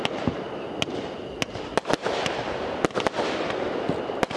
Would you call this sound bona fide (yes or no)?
yes